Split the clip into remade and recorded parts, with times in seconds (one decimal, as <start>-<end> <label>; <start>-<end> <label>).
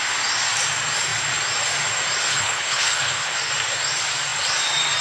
0.0-2.3 recorded; 2.3-3.5 remade; 3.5-5.0 recorded